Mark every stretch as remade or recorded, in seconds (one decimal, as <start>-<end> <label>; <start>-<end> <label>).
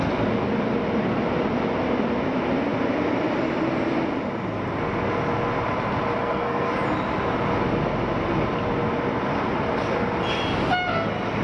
0.0-6.2 recorded; 6.2-6.7 remade; 6.7-11.4 recorded